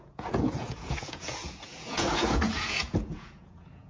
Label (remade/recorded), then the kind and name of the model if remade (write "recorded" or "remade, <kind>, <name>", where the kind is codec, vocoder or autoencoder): remade, vocoder, Vocos